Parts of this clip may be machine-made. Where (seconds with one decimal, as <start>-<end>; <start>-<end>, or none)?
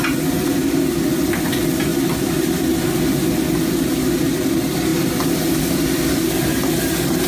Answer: 1.9-2.8